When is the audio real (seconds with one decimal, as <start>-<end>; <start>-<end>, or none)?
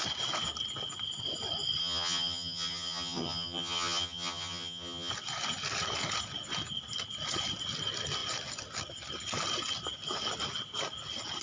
0.0-1.8; 5.1-11.4